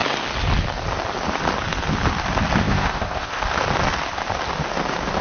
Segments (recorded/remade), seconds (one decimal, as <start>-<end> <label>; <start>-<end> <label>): 0.0-2.6 recorded; 2.6-3.4 remade; 3.4-5.2 recorded